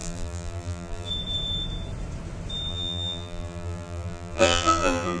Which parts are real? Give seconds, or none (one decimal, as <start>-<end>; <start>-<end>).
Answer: 1.1-2.7

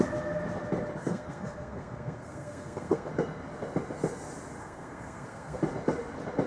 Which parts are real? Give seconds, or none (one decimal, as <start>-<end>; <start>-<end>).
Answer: 0.0-1.0; 3.1-4.6; 5.6-6.5

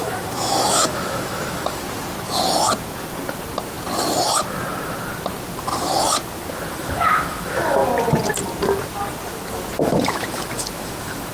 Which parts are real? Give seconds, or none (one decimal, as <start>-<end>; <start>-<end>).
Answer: 1.8-6.7; 7.8-9.5

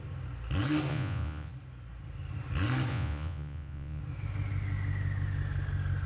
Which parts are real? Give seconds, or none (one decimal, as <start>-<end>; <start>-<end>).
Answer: 0.0-0.9; 1.5-2.9; 4.0-6.1

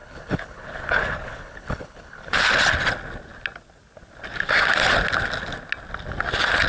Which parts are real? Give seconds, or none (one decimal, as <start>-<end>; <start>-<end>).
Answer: 2.4-6.7